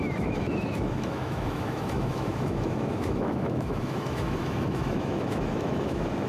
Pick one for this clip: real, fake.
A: fake